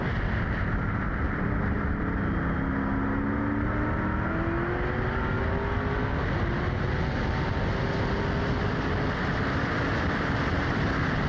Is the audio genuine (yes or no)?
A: yes